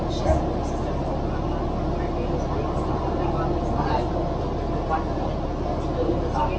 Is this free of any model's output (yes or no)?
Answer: yes